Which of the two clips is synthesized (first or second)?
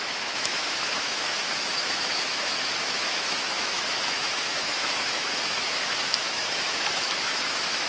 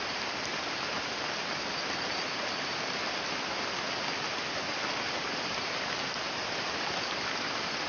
first